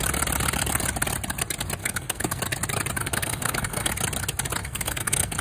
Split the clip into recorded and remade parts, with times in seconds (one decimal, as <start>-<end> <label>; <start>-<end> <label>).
0.0-1.8 recorded; 1.8-2.4 remade; 2.4-3.0 recorded; 3.0-3.9 remade; 3.9-4.6 recorded; 4.6-5.4 remade